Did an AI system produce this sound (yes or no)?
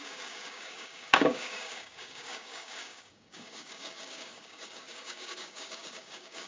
yes